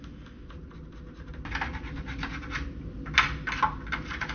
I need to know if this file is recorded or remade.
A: recorded